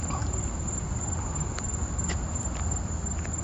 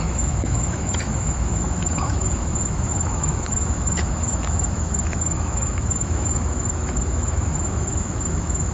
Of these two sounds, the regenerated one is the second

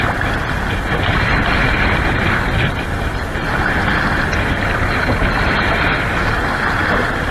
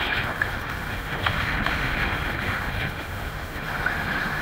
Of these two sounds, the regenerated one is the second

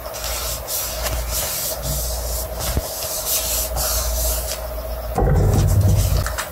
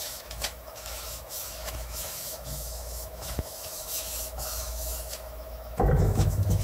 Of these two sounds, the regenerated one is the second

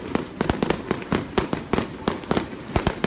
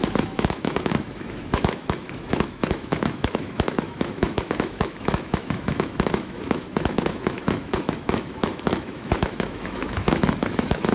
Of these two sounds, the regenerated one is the second